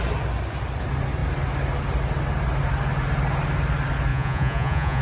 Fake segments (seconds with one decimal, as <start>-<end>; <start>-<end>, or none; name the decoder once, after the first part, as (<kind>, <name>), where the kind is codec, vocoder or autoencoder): 4.1-5.0 (vocoder, Vocos)